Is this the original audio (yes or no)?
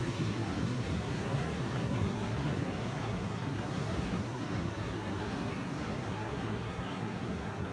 no